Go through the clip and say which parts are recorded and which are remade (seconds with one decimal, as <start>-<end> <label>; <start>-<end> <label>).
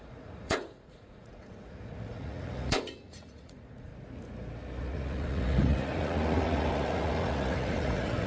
0.0-3.9 remade; 3.9-4.8 recorded; 4.8-8.3 remade